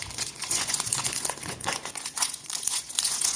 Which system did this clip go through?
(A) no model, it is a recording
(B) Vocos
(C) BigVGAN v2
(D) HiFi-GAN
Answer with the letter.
B